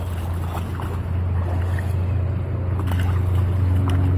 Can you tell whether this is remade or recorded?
recorded